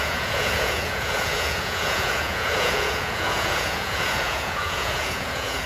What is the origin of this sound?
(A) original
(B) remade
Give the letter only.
B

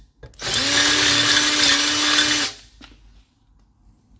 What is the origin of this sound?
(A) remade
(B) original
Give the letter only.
B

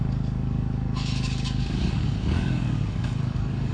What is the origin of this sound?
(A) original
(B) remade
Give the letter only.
B